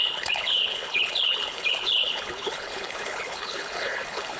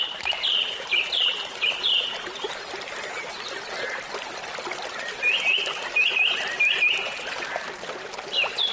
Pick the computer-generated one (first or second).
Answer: first